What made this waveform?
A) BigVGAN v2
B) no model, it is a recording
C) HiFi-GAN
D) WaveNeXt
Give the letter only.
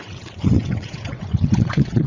D